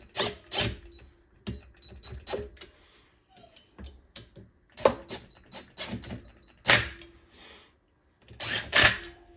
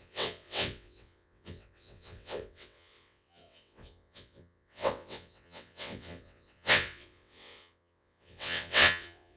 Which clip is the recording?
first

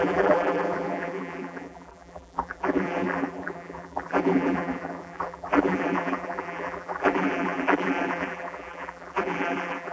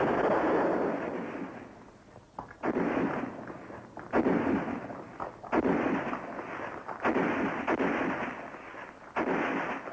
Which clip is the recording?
second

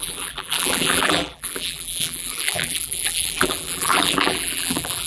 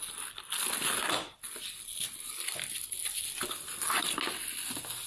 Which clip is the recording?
second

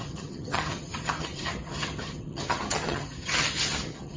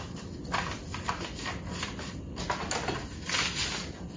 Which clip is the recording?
second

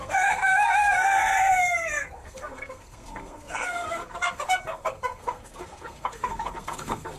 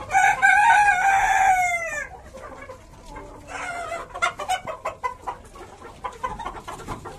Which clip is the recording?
second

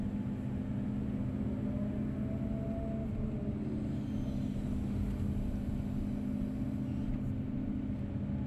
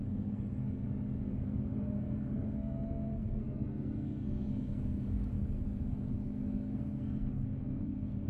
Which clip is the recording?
first